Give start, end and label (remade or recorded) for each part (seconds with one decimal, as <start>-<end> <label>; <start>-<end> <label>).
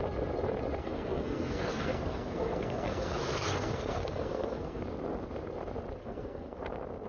0.0-0.8 recorded; 0.8-4.8 remade; 4.8-6.0 recorded; 6.0-6.6 remade; 6.6-7.1 recorded